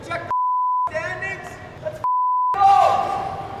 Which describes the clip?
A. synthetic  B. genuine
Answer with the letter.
B